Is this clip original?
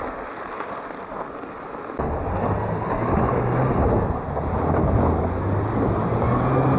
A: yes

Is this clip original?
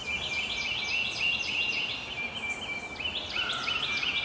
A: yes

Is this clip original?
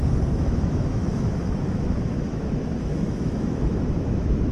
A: no